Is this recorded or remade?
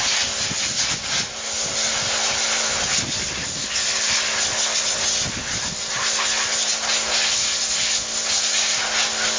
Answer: recorded